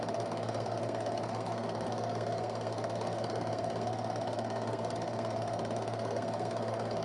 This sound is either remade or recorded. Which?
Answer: remade